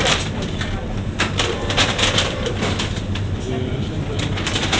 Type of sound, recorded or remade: remade